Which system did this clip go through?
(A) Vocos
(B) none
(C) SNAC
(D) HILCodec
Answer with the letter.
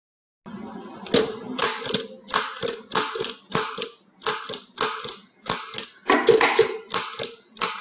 B